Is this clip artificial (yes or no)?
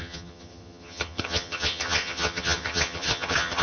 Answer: yes